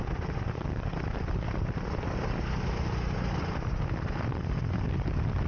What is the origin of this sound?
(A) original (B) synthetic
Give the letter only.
A